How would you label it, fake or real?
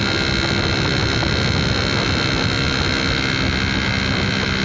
real